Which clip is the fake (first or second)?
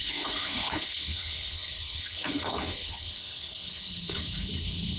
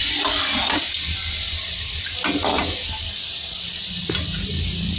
first